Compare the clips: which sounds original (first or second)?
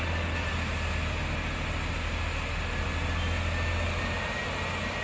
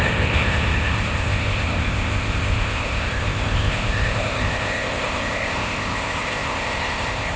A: first